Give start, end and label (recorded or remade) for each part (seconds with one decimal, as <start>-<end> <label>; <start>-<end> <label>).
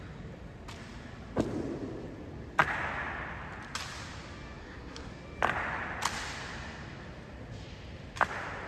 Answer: 0.0-4.6 recorded; 4.6-5.1 remade; 5.1-8.7 recorded